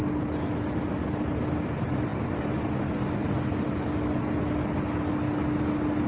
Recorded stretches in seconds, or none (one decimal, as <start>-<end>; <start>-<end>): 0.0-6.1